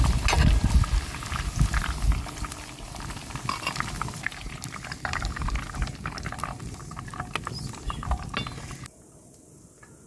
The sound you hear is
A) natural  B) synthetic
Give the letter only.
A